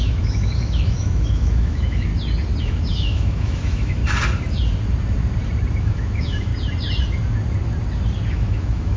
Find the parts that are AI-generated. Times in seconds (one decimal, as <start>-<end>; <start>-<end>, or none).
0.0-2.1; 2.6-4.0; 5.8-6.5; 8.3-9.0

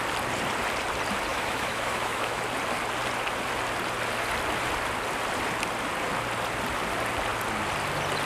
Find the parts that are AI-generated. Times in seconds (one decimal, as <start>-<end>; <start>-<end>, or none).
1.3-2.4

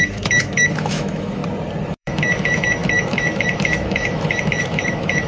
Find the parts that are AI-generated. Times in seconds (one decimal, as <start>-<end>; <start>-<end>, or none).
0.0-1.4; 1.9-5.3

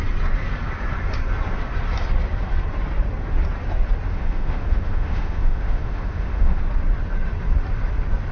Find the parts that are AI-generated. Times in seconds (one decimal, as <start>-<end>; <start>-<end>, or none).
4.1-6.6

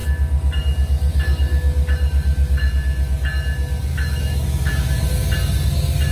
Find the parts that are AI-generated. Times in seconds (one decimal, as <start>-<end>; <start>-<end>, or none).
1.1-2.7; 3.9-5.1

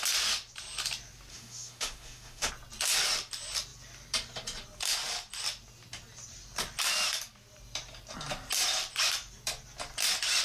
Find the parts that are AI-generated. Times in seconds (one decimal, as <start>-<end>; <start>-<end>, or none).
1.3-2.5

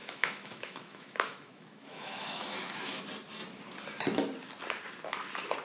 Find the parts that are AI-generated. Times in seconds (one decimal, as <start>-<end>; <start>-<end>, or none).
0.0-3.0

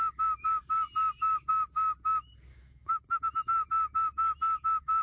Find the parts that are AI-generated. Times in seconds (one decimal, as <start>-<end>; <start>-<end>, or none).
2.5-3.0